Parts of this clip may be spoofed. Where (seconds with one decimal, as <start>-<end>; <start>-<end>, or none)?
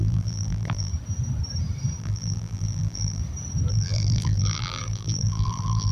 0.0-0.9; 2.0-3.2; 3.7-5.9